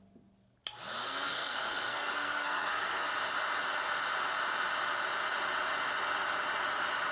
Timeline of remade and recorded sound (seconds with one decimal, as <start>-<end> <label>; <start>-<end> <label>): 0.0-1.0 recorded; 1.0-3.1 remade; 3.1-7.1 recorded